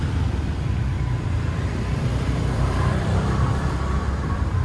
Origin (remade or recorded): remade